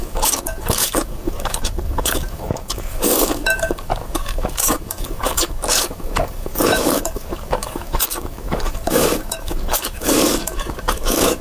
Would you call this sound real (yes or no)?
no